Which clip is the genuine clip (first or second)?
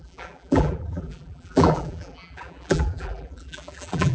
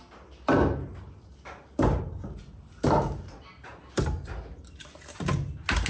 second